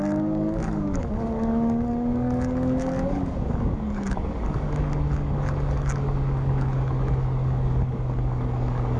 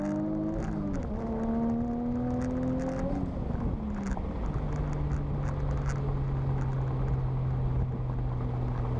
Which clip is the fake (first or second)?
first